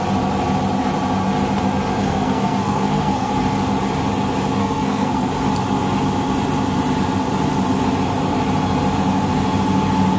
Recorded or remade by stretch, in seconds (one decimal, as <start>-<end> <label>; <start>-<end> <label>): 0.0-2.0 recorded; 2.0-3.3 remade; 3.3-4.6 recorded; 4.6-5.3 remade; 5.3-10.2 recorded